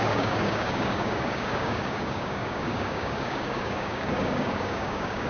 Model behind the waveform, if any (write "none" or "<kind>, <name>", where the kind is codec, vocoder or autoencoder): codec, DAC